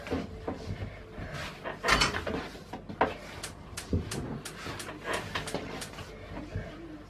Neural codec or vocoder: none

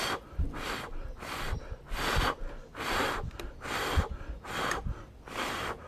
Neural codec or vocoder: none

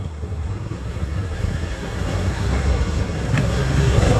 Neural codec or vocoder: codec, SNAC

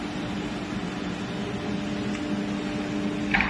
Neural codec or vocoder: none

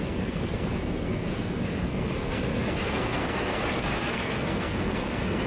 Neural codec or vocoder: codec, SNAC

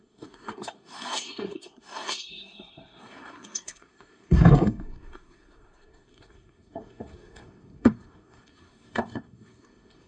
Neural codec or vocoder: codec, SNAC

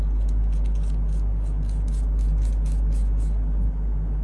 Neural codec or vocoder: none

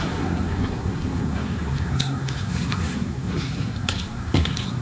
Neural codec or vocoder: codec, SNAC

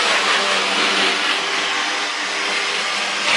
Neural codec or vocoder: none